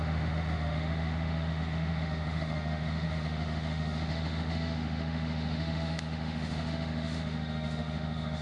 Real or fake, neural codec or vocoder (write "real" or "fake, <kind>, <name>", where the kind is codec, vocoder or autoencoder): fake, autoencoder, DAC-VAE